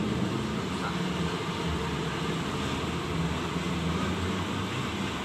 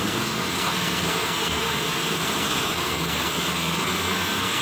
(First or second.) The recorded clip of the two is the first